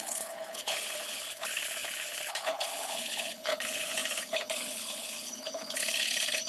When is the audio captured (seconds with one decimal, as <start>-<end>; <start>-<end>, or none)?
none